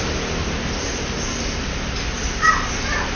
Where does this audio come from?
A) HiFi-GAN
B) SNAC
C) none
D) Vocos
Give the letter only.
C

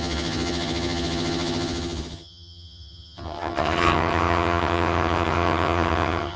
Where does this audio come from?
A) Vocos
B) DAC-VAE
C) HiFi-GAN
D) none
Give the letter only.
C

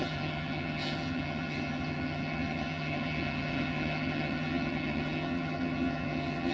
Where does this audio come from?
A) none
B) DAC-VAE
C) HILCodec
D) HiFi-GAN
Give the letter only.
D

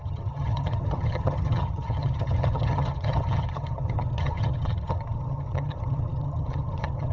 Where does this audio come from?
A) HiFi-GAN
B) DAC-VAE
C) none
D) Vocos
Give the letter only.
A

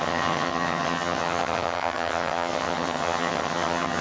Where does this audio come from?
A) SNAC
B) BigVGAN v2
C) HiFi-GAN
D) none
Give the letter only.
C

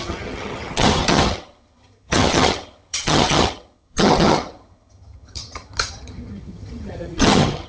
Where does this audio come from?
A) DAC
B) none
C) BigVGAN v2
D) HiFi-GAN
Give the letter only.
D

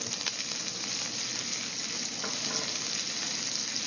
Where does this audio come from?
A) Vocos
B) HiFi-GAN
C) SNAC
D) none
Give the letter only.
D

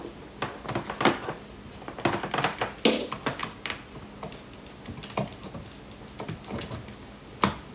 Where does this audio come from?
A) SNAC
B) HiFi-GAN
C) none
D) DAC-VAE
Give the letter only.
C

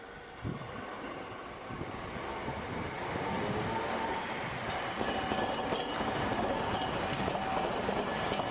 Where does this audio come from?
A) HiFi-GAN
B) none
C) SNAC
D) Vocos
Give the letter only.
B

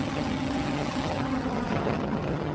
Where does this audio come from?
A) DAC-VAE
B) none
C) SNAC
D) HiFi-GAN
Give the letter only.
D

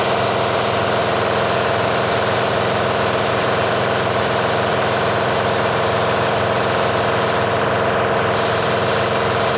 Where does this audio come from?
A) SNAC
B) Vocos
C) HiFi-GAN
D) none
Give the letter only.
D